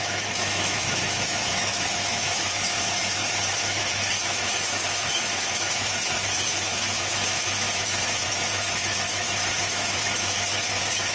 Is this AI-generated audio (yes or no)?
yes